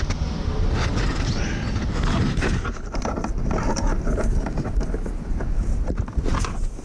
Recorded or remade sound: recorded